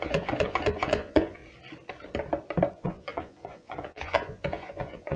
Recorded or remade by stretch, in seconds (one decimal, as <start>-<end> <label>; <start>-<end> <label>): 0.0-1.4 remade; 1.4-2.7 recorded; 2.7-5.2 remade